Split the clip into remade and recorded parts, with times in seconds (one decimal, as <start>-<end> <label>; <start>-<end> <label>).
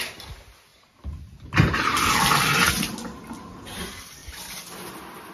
0.0-0.7 recorded; 0.7-2.7 remade; 2.7-4.2 recorded; 4.2-4.8 remade; 4.8-5.3 recorded